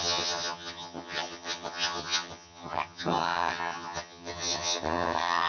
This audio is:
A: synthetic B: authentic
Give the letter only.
A